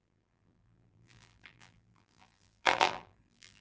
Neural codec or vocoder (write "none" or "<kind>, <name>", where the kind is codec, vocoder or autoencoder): vocoder, BigVGAN v2